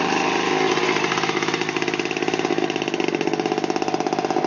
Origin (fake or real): real